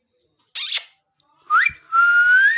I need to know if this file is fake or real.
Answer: real